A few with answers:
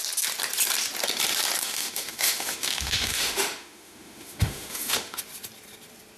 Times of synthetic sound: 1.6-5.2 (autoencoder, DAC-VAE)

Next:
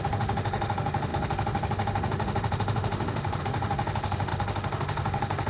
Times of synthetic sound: 0.0-5.5 (autoencoder, DAC-VAE)

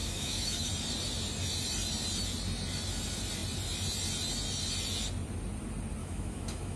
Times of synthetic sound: 0.0-0.7 (autoencoder, DAC-VAE); 6.0-6.8